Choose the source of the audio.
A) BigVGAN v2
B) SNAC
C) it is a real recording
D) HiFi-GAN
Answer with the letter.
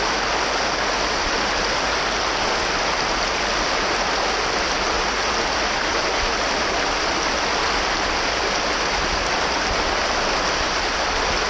C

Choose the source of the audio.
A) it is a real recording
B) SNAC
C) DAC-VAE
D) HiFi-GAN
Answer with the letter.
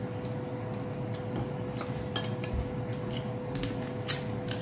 A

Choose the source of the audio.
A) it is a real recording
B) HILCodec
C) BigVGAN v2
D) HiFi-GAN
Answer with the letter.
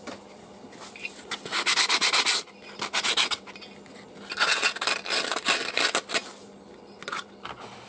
A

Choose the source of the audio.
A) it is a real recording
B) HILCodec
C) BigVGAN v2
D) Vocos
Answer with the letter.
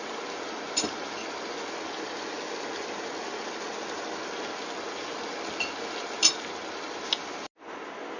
A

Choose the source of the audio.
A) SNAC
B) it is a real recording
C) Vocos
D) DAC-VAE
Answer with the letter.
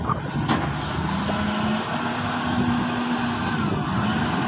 B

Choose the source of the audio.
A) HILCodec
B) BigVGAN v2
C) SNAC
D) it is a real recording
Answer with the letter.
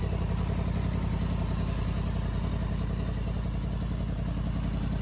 D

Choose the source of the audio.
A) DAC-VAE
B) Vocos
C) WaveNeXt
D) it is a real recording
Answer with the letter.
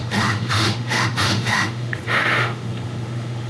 A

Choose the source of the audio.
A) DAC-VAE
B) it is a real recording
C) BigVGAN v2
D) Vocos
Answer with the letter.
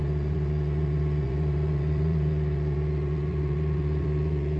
D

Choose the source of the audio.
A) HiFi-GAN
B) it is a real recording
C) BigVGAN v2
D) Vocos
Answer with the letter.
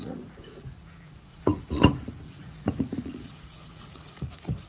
D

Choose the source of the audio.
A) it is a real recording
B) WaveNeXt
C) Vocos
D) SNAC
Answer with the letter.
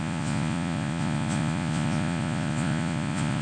C